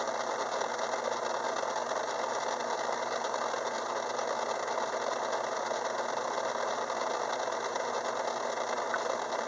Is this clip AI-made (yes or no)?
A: no